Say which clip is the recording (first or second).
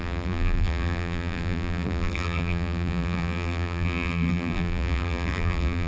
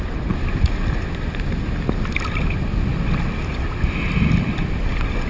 second